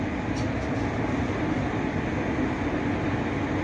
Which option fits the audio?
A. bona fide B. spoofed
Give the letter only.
A